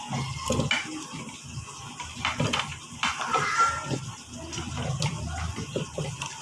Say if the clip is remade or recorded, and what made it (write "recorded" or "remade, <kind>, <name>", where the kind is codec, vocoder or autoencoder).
recorded